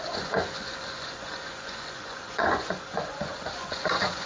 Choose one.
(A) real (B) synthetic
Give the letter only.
B